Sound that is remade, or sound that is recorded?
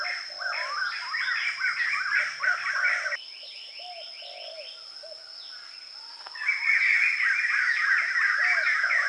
recorded